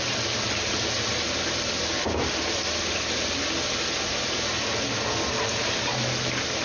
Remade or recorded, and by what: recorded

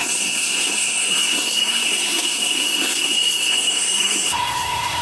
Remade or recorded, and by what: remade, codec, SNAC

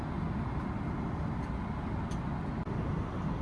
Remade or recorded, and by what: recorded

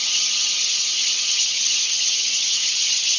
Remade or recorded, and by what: remade, vocoder, HiFi-GAN